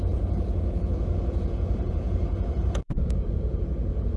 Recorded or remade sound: remade